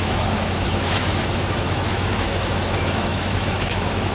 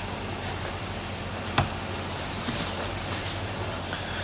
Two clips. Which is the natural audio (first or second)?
second